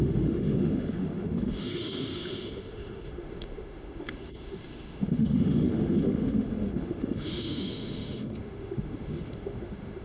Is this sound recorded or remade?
remade